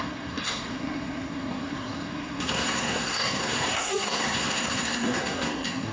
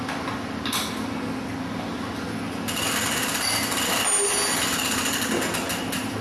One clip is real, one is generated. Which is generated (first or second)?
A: first